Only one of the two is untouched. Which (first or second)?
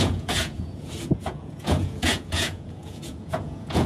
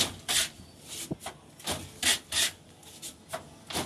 second